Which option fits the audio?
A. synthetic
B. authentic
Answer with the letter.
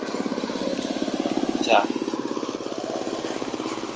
B